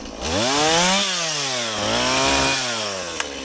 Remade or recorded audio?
recorded